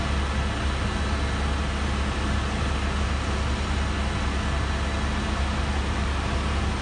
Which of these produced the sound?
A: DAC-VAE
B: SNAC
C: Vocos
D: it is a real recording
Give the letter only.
D